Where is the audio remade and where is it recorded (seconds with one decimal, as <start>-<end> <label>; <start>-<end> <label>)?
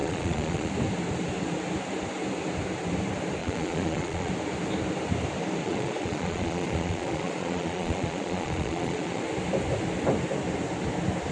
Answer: 0.0-0.7 remade; 0.7-3.4 recorded; 3.4-4.3 remade; 4.3-5.6 recorded; 5.6-9.2 remade; 9.2-11.3 recorded